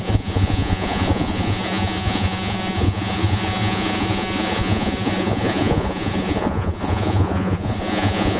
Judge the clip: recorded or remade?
remade